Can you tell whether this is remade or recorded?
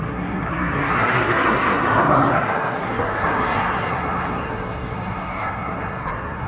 remade